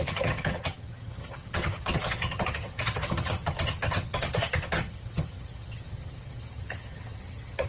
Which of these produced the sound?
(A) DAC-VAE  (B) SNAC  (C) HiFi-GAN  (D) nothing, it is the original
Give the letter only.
C